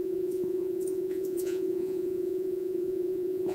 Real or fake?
fake